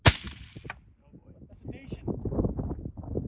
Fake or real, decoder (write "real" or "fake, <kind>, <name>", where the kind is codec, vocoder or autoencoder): real